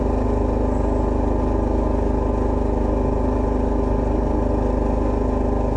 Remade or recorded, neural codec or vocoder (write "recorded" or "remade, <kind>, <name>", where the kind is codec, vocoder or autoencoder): recorded